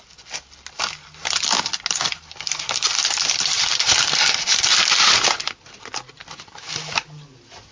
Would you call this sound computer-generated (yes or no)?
no